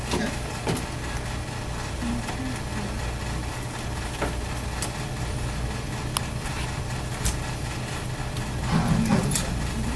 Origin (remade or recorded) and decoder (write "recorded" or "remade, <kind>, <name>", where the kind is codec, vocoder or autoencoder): recorded